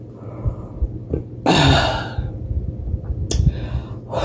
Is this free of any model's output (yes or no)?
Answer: yes